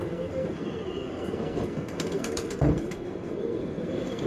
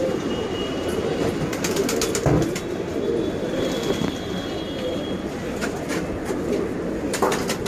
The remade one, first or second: first